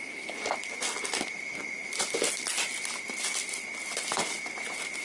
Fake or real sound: real